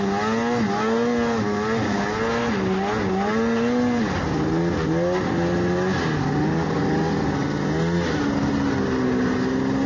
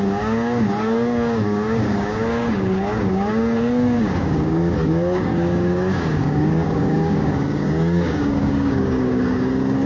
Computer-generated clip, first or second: second